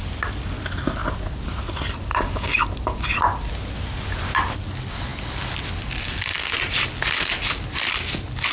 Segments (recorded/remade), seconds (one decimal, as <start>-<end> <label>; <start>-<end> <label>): 0.0-2.1 recorded; 2.1-2.6 remade; 2.6-8.5 recorded